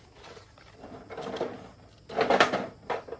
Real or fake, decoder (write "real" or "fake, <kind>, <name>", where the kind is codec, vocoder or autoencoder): real